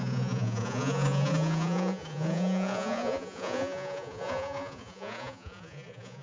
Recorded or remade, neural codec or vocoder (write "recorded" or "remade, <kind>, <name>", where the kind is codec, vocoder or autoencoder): remade, vocoder, Vocos